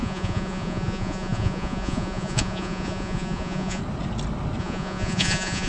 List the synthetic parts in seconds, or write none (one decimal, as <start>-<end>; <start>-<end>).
0.0-3.8; 4.6-5.7

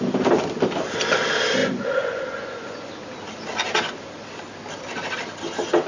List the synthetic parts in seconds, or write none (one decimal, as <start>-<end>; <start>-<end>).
1.6-2.9

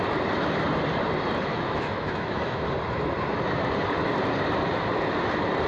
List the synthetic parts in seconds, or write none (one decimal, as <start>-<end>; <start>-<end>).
1.5-2.7